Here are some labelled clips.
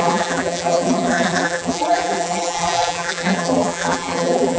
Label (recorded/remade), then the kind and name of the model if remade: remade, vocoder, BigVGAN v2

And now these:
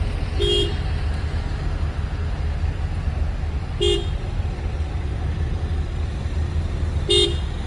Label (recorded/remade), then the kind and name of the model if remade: recorded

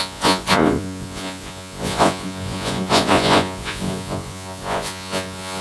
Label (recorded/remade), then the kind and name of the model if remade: remade, vocoder, Vocos